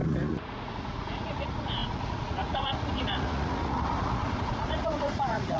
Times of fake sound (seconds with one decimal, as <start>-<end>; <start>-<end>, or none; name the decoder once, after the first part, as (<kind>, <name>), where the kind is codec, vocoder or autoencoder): 0.0-5.6 (vocoder, Vocos)